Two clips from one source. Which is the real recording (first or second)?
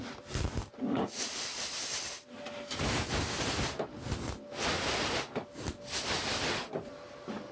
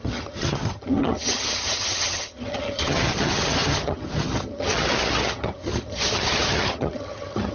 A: first